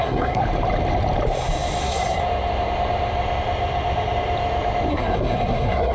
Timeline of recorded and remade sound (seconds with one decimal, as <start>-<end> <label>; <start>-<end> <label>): 0.0-0.4 remade; 0.4-1.8 recorded; 1.8-2.2 remade; 2.2-4.9 recorded; 4.9-5.9 remade